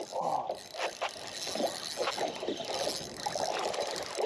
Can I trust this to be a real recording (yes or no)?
yes